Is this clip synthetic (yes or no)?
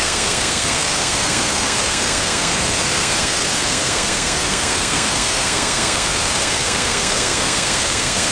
yes